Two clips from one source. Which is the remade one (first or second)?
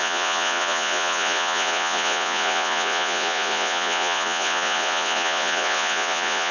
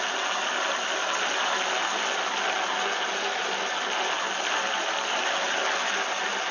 first